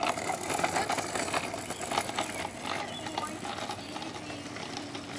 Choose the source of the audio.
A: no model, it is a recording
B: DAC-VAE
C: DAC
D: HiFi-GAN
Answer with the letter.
A